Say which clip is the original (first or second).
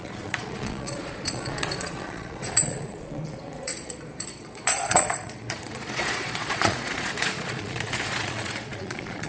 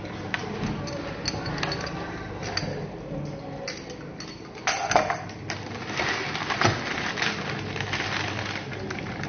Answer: second